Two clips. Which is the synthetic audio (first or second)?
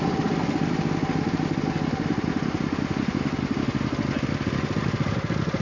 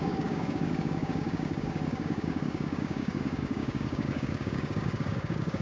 second